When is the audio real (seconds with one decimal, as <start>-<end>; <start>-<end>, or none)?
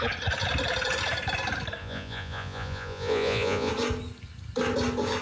0.0-1.8; 3.7-5.2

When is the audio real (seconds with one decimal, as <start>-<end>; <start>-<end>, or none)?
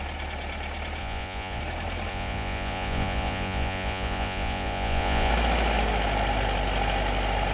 0.0-1.0; 1.6-2.1; 5.3-7.5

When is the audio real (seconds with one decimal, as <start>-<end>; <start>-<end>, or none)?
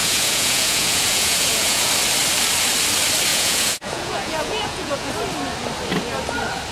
1.9-3.3; 5.1-6.7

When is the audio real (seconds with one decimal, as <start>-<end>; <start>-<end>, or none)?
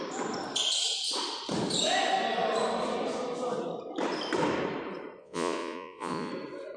0.0-5.2; 6.3-6.8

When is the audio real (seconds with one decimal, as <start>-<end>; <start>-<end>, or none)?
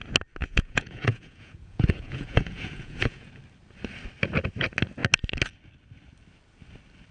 0.0-0.4; 3.3-7.1